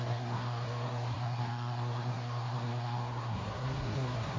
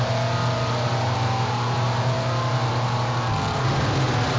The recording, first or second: second